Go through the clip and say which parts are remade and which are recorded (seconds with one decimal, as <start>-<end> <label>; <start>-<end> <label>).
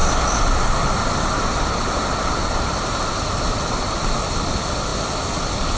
0.0-5.8 recorded